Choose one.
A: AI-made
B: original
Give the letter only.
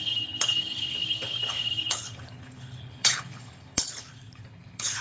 A